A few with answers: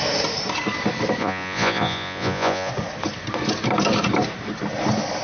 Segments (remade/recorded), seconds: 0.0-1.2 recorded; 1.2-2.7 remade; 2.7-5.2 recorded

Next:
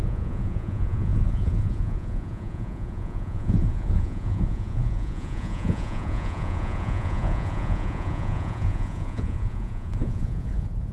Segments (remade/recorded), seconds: 0.0-10.9 remade

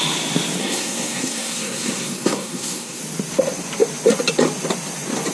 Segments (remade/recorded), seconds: 0.0-0.6 recorded; 0.6-3.0 remade; 3.0-5.3 recorded